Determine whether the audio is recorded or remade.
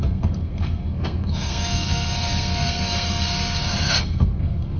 remade